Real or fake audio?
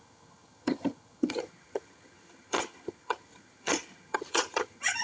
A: fake